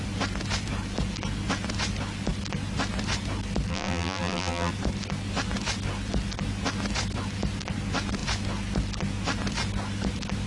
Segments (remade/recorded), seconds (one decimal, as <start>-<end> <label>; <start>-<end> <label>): 0.0-3.7 recorded; 3.7-4.7 remade; 4.7-10.5 recorded